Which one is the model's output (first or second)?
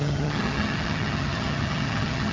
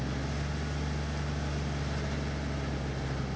first